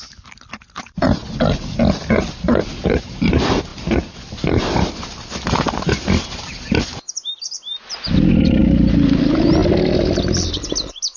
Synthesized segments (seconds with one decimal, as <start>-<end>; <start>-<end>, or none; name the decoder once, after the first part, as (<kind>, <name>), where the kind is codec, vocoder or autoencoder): 0.0-1.2 (vocoder, BigVGAN v2); 2.1-9.6

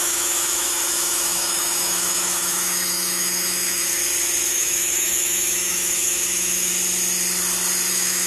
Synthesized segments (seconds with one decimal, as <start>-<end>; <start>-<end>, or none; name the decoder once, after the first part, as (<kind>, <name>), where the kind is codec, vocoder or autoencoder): 0.0-4.0 (autoencoder, DAC-VAE); 4.5-6.7; 7.9-8.3

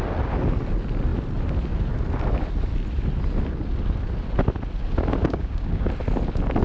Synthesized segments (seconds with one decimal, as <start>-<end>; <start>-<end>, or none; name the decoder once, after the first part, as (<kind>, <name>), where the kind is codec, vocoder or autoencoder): 5.2-5.9 (codec, DAC)

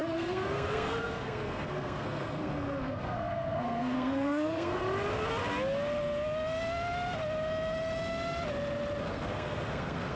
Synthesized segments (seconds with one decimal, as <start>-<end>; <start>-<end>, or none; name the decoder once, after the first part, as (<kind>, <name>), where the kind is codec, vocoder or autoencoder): 0.0-4.8 (codec, SNAC); 9.0-10.2

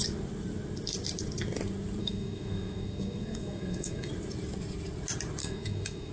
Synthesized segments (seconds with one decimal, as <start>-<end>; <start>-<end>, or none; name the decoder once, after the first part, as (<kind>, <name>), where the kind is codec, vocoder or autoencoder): 2.0-4.1 (autoencoder, DAC-VAE); 5.4-6.1

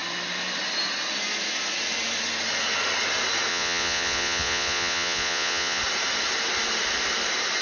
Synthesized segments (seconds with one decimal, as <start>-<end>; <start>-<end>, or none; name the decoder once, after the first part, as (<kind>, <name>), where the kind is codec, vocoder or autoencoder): 3.5-5.8 (vocoder, Vocos)

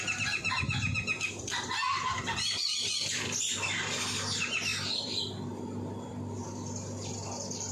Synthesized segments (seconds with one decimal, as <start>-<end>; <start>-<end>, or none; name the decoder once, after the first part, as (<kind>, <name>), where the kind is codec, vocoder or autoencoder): 4.7-6.4 (vocoder, BigVGAN v2)

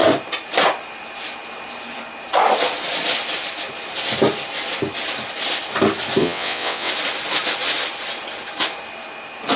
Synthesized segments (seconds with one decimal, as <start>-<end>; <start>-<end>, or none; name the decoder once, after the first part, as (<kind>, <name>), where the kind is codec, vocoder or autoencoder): 6.2-6.9 (vocoder, WaveNeXt)